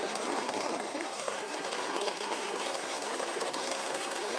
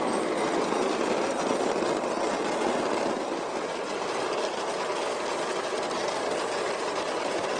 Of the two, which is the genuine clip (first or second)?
second